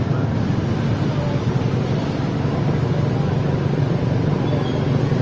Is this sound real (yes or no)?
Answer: yes